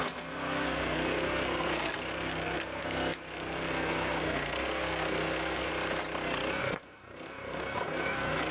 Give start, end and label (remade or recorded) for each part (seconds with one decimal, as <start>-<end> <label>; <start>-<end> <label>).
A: 0.0-5.7 remade; 5.7-6.6 recorded; 6.6-8.5 remade